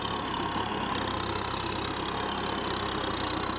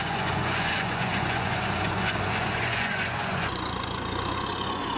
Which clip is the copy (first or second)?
second